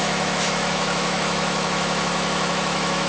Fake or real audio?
fake